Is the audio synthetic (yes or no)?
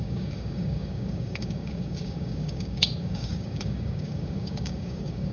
yes